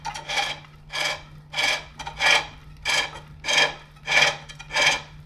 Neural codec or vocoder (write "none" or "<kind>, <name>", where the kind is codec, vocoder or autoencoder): none